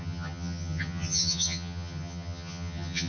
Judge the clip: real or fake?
fake